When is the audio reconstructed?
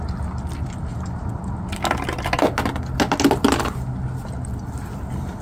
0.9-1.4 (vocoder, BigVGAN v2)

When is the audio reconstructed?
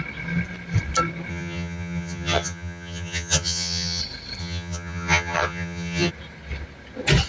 1.3-4.0 (vocoder, HiFi-GAN); 4.4-6.1